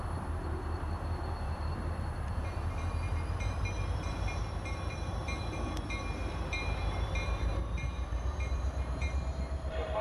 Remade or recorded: remade